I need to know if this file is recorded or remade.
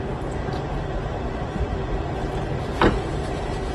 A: recorded